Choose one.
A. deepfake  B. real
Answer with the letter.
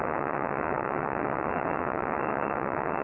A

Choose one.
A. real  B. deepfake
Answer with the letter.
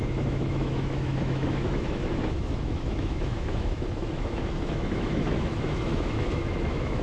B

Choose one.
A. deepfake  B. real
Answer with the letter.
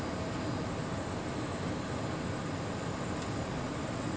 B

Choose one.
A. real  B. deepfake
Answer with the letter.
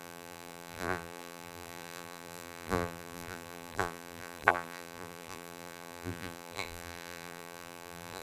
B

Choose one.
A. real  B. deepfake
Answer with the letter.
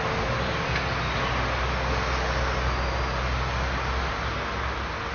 A